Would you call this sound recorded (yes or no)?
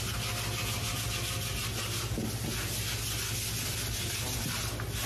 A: yes